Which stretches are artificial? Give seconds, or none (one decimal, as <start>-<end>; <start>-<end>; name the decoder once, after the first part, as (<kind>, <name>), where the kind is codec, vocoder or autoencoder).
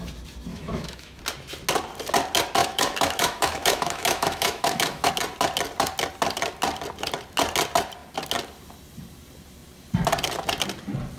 0.5-1.2 (autoencoder, DAC-VAE); 2.6-5.1